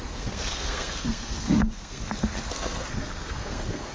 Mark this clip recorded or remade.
remade